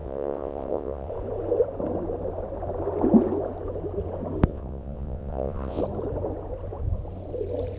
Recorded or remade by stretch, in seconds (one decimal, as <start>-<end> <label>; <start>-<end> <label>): 0.0-1.1 remade; 1.1-4.5 recorded; 4.5-5.8 remade; 5.8-7.8 recorded